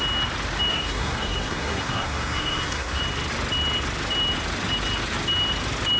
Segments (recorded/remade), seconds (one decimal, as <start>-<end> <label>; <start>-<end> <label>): 0.0-0.7 recorded; 0.7-3.0 remade; 3.0-6.0 recorded